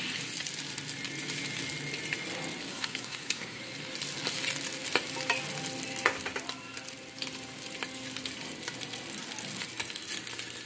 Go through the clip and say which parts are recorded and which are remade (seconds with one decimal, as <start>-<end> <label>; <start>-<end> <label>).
0.0-2.7 recorded; 2.7-3.6 remade; 3.6-10.7 recorded